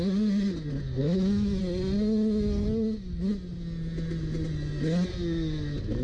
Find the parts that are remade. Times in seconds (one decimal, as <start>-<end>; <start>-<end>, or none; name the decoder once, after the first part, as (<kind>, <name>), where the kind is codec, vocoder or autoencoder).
1.0-1.6 (autoencoder, DAC-VAE)